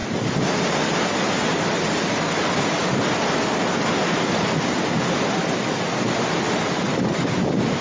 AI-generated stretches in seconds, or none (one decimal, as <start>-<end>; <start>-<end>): none